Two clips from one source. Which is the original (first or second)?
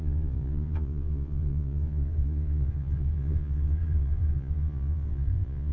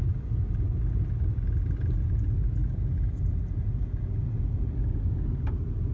second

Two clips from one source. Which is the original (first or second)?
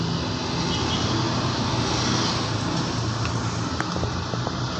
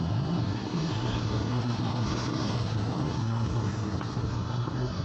first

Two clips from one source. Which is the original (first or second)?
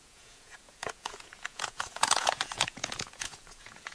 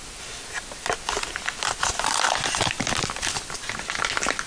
second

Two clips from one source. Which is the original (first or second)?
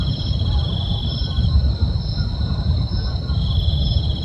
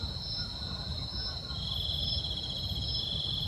second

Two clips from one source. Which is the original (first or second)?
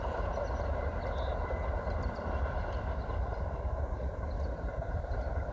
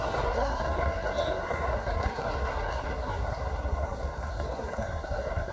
first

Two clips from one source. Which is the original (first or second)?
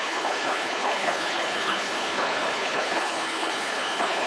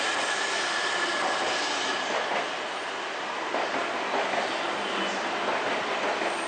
second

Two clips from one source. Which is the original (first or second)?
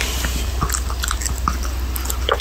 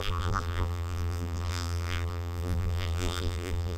first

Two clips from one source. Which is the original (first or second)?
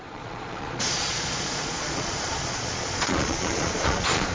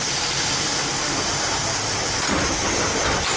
second